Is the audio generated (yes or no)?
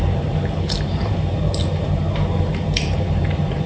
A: yes